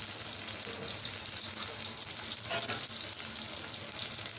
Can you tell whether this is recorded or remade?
recorded